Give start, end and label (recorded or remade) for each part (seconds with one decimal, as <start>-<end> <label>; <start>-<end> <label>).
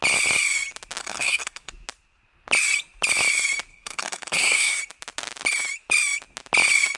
0.0-1.0 recorded; 1.0-1.7 remade; 1.7-3.7 recorded; 3.7-4.8 remade; 4.8-7.0 recorded